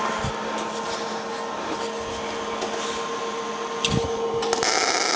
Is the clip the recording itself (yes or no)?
yes